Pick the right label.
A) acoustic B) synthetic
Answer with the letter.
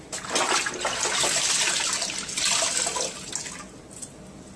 A